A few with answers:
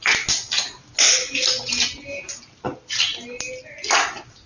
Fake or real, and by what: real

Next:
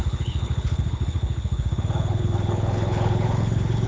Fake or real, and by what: fake, codec, HILCodec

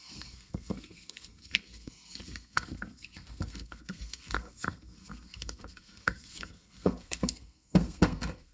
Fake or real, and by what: fake, codec, SNAC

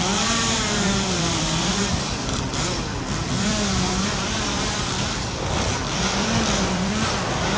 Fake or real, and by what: fake, vocoder, BigVGAN v2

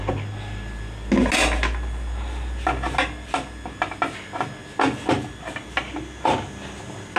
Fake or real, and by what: real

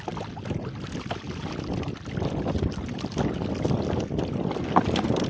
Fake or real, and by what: real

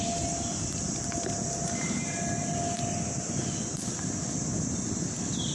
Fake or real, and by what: real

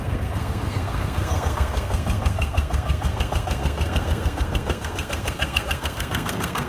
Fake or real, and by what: fake, codec, SNAC